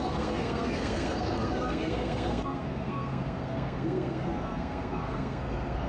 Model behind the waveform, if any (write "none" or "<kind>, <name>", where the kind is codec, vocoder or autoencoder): codec, SNAC